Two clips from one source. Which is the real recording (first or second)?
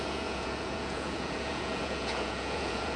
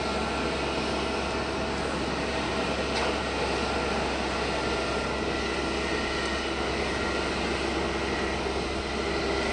second